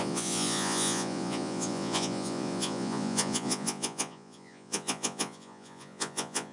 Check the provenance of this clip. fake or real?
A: fake